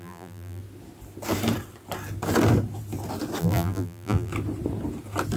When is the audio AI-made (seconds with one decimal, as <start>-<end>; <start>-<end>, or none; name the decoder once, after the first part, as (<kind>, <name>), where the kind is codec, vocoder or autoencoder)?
0.0-0.6 (vocoder, BigVGAN v2); 3.4-4.3